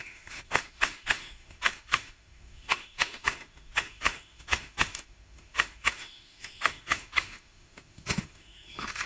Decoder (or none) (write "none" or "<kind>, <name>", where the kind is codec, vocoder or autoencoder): autoencoder, DAC-VAE